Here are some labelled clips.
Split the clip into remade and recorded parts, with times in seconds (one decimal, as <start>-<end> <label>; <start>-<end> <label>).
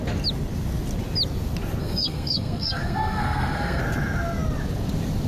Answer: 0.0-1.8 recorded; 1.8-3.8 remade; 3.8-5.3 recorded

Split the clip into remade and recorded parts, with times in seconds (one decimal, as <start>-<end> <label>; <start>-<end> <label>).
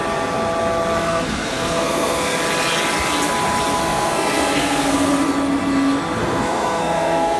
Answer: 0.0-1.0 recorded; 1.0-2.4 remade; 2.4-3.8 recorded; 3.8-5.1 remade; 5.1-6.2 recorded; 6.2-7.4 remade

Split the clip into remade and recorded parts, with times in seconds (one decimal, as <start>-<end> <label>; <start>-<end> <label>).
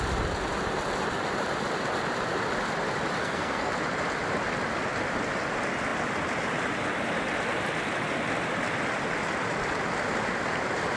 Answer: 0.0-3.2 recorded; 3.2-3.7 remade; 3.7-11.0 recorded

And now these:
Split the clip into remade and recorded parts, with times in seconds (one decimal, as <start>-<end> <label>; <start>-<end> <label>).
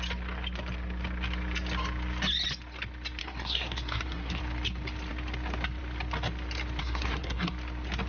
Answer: 0.0-3.2 recorded; 3.2-4.4 remade; 4.4-6.8 recorded; 6.8-7.5 remade; 7.5-8.1 recorded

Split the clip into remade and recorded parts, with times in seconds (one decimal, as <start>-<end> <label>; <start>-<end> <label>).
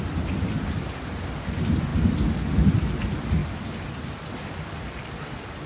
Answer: 0.0-5.7 recorded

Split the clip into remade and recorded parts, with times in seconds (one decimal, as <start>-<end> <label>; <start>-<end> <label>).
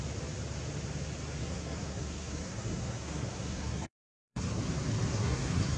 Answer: 0.0-1.4 recorded; 1.4-4.6 remade; 4.6-5.1 recorded; 5.1-5.8 remade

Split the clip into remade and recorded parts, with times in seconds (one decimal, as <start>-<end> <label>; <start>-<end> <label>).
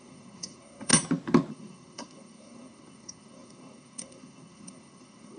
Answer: 0.0-0.9 remade; 0.9-1.5 recorded; 1.5-5.4 remade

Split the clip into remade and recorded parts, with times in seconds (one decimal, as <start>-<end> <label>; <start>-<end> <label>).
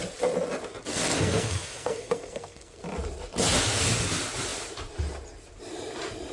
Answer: 0.0-0.9 recorded; 0.9-2.8 remade; 2.8-6.3 recorded